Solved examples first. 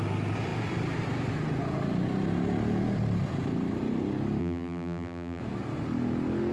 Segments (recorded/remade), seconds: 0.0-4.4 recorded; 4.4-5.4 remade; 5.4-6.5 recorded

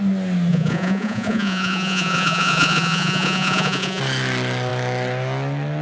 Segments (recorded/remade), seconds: 0.0-0.5 recorded; 0.5-4.0 remade; 4.0-5.8 recorded

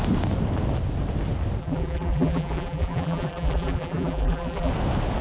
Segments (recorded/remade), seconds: 0.0-1.6 recorded; 1.6-4.7 remade; 4.7-5.2 recorded

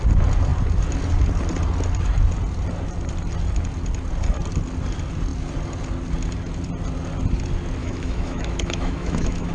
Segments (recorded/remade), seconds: 0.0-7.8 recorded; 7.8-9.5 remade

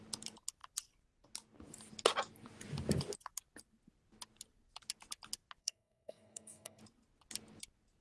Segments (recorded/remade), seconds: 0.0-5.6 recorded; 5.6-6.8 remade; 6.8-8.0 recorded

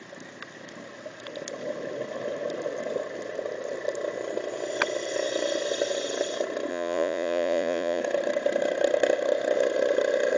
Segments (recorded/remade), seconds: 0.0-6.7 recorded; 6.7-8.0 remade; 8.0-10.4 recorded

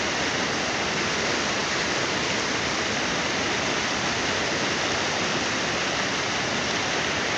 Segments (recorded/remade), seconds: 0.0-7.4 recorded